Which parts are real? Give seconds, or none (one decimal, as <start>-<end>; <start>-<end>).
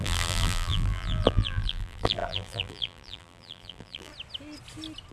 4.1-5.1